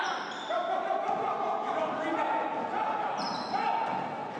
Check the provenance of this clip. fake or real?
real